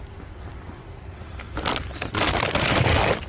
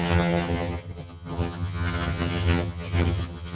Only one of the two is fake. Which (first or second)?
second